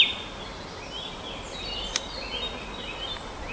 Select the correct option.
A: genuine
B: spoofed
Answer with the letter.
A